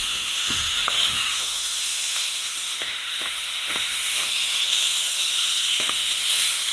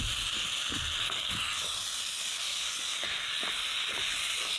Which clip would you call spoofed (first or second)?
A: first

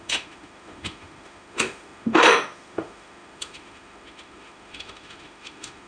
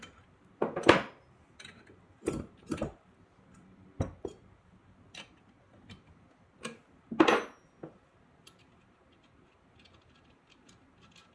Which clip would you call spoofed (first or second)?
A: first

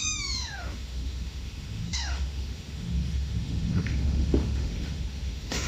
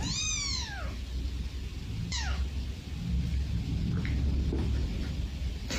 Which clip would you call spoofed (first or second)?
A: first